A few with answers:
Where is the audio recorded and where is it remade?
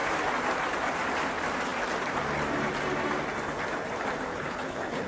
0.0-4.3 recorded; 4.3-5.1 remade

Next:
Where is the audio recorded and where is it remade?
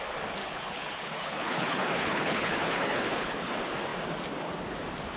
0.0-0.4 recorded; 0.4-3.5 remade; 3.5-5.2 recorded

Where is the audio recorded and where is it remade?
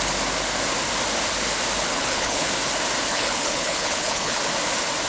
0.0-1.9 recorded; 1.9-2.5 remade; 2.5-3.1 recorded; 3.1-4.4 remade; 4.4-5.1 recorded